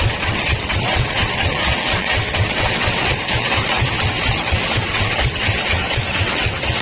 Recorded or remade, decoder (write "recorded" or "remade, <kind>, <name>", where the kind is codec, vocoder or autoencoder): remade, vocoder, WaveNeXt